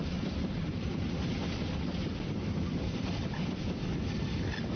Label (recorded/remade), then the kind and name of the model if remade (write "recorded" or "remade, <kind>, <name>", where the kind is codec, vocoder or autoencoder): remade, vocoder, BigVGAN v2